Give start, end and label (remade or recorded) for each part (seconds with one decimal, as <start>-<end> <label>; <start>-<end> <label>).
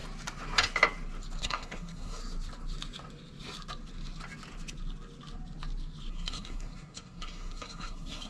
0.0-1.4 recorded; 1.4-2.2 remade; 2.2-6.1 recorded; 6.1-8.3 remade